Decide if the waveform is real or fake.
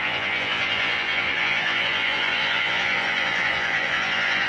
fake